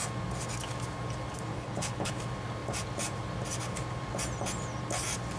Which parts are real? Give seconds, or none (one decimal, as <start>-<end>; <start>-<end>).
0.0-1.5; 2.1-5.4

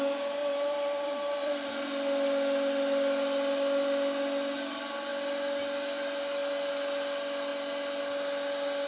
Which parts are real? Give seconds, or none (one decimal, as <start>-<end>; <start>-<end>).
0.0-0.4; 1.7-8.9

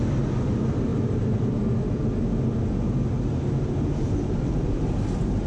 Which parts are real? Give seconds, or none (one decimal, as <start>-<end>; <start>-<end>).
0.9-4.0